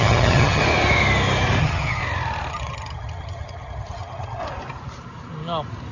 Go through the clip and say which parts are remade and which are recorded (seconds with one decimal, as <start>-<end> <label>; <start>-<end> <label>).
0.0-0.6 remade; 0.6-1.6 recorded; 1.6-2.0 remade; 2.0-2.5 recorded; 2.5-4.4 remade; 4.4-5.9 recorded